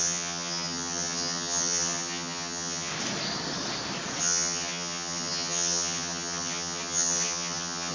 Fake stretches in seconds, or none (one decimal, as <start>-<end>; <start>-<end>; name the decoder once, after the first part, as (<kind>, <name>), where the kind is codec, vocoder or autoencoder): 0.0-2.9 (vocoder, HiFi-GAN); 4.2-7.9

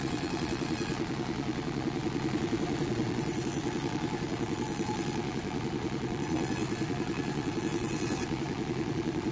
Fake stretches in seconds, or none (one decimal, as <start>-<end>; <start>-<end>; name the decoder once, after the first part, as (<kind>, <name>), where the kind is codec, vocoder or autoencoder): 0.0-9.3 (vocoder, Vocos)

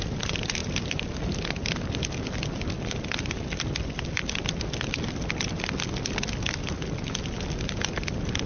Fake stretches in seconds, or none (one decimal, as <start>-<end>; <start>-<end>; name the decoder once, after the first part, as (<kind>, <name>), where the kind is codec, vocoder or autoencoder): none

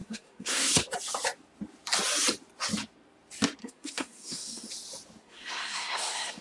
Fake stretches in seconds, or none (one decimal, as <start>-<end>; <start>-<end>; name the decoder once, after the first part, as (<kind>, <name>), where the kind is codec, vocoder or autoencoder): 0.0-0.8 (codec, SNAC); 3.6-4.7; 5.2-6.4

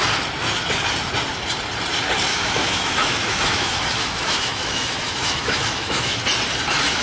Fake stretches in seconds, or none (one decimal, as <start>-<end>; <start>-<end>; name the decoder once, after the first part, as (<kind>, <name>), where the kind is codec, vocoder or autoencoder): 2.3-6.2 (autoencoder, DAC-VAE)

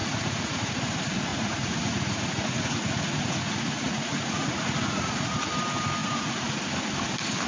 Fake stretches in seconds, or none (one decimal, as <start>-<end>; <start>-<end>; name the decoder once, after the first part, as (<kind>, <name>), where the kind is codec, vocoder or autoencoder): 0.0-0.7 (vocoder, Vocos); 1.3-5.5; 6.0-6.6